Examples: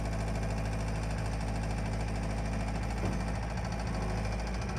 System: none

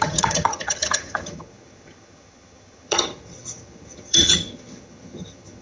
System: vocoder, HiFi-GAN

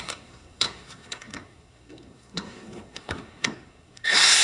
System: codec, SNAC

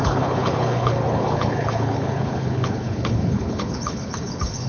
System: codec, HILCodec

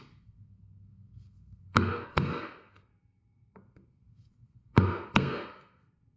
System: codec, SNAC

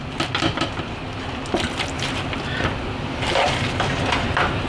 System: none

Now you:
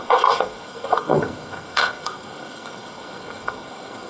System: codec, SNAC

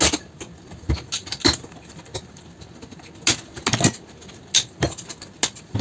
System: none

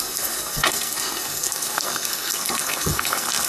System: codec, SNAC